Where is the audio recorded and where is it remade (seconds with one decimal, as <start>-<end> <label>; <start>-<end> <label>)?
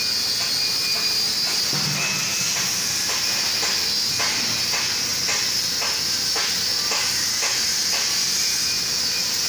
0.0-2.2 recorded; 2.2-3.9 remade; 3.9-6.7 recorded; 6.7-7.3 remade; 7.3-9.5 recorded